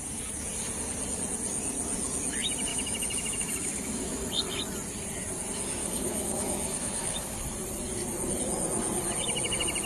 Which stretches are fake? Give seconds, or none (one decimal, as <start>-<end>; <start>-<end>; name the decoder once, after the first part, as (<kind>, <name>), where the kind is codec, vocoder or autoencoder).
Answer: 2.7-4.3 (autoencoder, DAC-VAE); 5.8-7.5